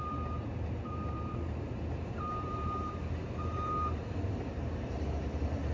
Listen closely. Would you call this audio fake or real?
fake